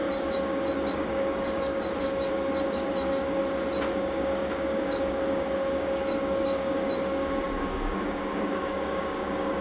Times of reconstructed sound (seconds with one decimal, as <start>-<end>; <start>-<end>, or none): 0.0-3.4; 3.9-9.6

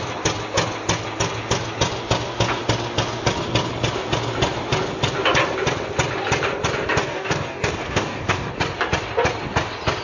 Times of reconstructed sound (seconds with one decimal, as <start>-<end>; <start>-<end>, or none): 7.0-8.5

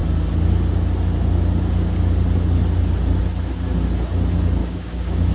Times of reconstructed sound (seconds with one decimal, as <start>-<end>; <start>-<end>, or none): 4.6-5.3

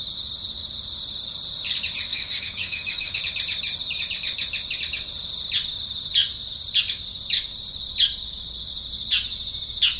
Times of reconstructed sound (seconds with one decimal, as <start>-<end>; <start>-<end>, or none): 2.1-3.2

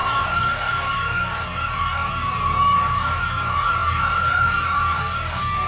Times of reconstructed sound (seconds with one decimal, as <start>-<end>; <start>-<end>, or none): 0.0-5.7

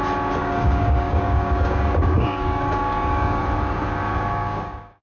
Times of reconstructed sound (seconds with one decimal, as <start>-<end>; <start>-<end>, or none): 0.4-3.4; 4.1-5.0

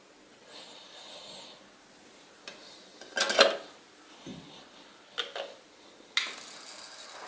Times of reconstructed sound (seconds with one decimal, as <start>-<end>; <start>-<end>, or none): none